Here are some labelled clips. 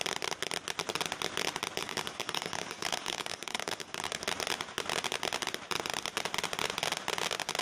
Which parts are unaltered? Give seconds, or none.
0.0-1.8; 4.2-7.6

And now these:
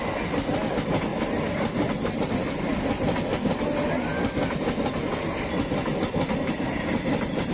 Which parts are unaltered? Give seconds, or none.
0.0-1.1; 2.6-7.5

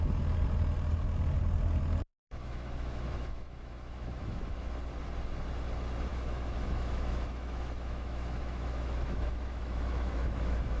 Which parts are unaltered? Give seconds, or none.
0.0-2.1; 4.8-6.1

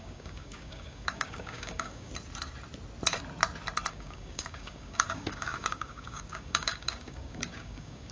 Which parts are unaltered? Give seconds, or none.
2.1-3.9